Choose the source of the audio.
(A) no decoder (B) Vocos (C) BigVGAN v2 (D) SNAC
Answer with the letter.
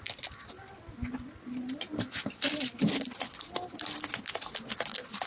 A